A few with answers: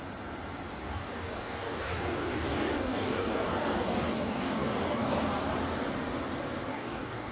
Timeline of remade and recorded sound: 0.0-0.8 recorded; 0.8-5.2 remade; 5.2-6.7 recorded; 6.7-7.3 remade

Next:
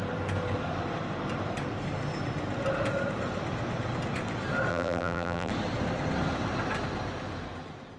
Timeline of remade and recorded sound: 0.0-4.7 recorded; 4.7-5.5 remade; 5.5-8.0 recorded

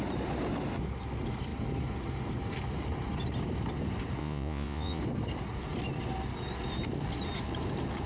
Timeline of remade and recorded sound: 0.0-4.2 recorded; 4.2-5.0 remade; 5.0-8.1 recorded

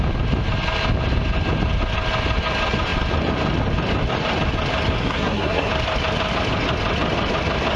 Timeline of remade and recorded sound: 0.0-5.0 recorded; 5.0-5.7 remade; 5.7-7.8 recorded

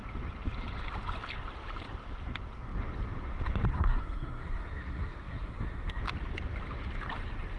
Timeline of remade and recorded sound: 0.0-3.7 recorded; 3.7-6.0 remade; 6.0-7.6 recorded

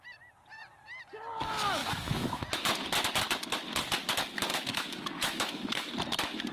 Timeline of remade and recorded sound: 0.0-1.8 recorded; 1.8-2.4 remade; 2.4-4.5 recorded; 4.5-5.9 remade; 5.9-6.5 recorded

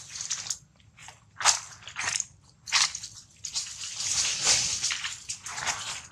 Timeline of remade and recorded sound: 0.0-1.0 recorded; 1.0-2.7 remade; 2.7-3.5 recorded; 3.5-4.0 remade; 4.0-6.1 recorded

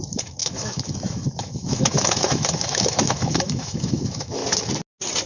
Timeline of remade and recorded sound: 0.0-4.4 remade; 4.4-5.3 recorded